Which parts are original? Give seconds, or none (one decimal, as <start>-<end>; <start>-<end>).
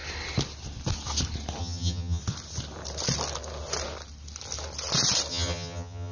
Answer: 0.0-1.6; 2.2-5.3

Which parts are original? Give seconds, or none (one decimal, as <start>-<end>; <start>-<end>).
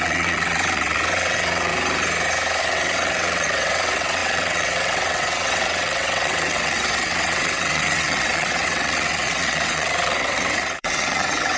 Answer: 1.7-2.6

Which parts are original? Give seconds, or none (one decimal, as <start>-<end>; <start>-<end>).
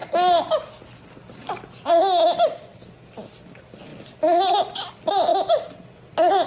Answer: 0.0-6.5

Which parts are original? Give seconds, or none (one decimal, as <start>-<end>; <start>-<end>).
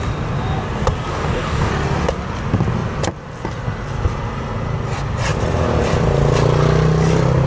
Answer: 0.0-1.1; 1.7-7.5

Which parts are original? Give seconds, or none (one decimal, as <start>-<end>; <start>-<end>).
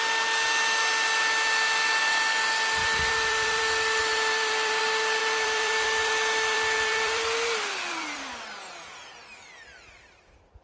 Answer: 0.0-2.8; 3.6-4.0; 4.8-5.2; 8.3-10.6